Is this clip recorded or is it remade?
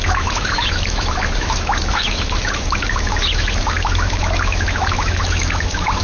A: remade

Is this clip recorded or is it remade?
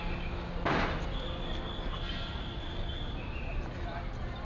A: recorded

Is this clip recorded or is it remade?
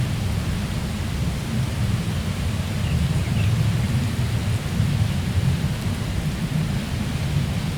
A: remade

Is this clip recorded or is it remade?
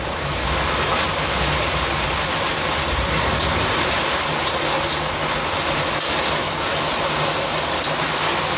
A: recorded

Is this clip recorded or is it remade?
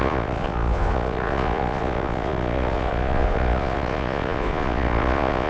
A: remade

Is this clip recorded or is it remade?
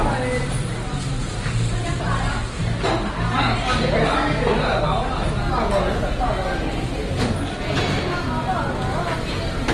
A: recorded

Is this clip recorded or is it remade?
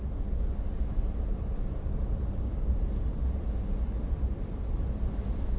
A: recorded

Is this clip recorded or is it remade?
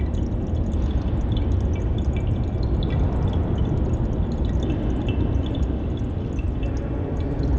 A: recorded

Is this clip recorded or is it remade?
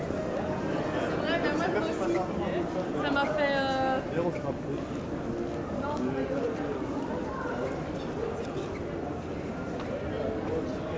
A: recorded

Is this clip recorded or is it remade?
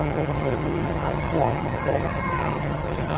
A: remade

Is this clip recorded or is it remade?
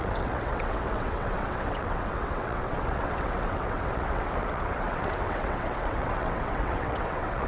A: remade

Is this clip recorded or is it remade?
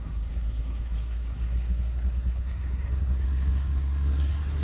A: remade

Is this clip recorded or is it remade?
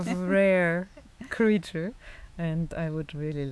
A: remade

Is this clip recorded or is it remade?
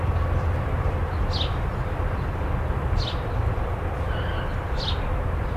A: recorded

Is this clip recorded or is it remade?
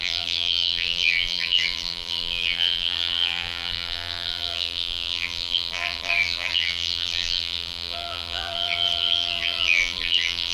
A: remade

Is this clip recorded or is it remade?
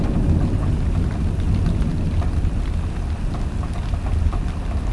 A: recorded